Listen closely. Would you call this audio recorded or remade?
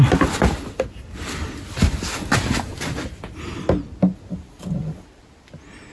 recorded